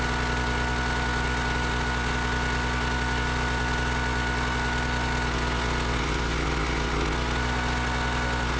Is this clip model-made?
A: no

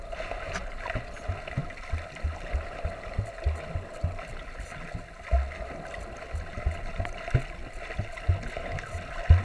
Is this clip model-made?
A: no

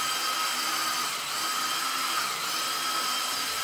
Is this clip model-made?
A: no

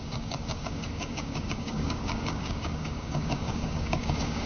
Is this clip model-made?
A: yes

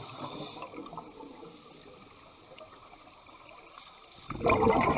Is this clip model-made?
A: no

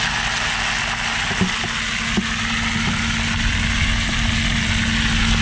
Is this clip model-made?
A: no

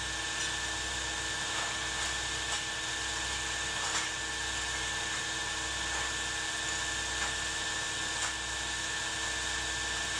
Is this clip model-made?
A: no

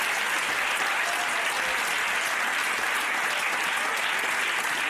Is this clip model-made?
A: no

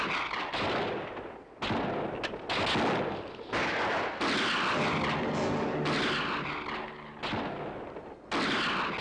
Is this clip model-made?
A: no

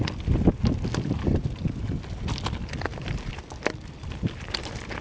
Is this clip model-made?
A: no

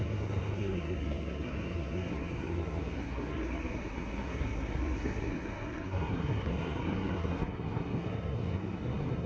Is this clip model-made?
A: yes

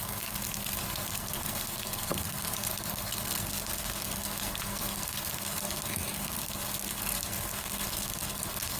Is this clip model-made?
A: yes